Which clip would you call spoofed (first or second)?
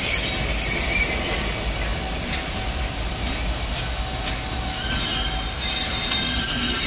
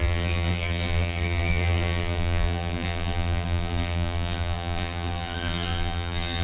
second